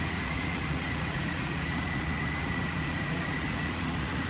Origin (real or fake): fake